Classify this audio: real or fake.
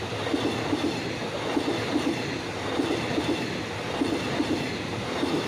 real